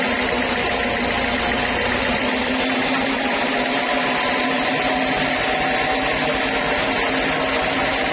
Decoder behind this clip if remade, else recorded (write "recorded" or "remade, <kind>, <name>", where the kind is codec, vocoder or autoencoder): recorded